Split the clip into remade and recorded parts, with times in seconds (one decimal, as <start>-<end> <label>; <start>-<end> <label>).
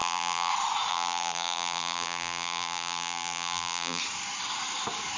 0.0-0.5 remade; 0.5-0.9 recorded; 0.9-4.0 remade; 4.0-5.2 recorded